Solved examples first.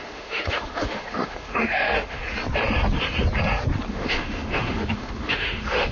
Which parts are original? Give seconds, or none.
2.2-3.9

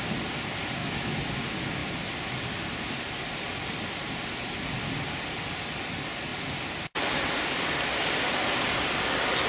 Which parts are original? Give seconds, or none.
0.0-0.8; 1.4-9.5